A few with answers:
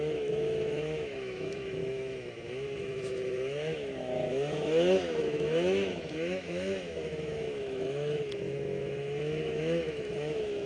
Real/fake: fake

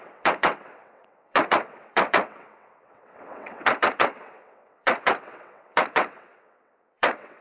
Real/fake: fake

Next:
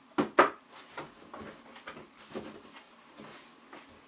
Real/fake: real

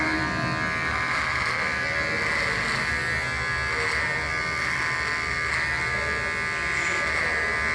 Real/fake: real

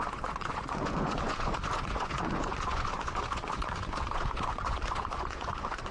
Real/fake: fake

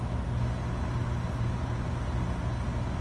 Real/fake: real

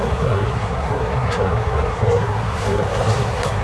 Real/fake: fake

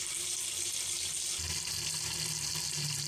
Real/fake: real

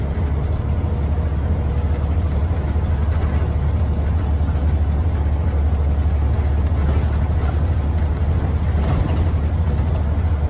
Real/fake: real